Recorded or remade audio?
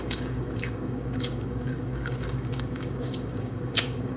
remade